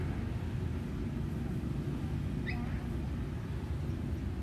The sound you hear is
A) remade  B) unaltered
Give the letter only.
B